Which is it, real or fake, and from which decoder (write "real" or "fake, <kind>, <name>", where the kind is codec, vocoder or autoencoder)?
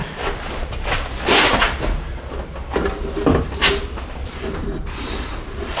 real